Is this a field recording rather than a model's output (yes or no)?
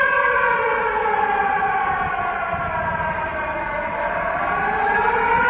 yes